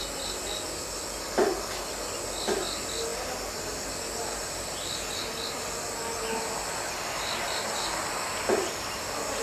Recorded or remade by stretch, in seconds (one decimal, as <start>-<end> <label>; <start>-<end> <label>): 0.0-9.4 recorded